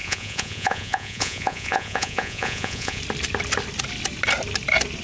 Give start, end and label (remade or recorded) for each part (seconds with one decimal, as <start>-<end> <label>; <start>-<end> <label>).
0.0-3.0 remade; 3.0-5.0 recorded